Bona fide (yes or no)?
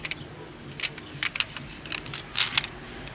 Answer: yes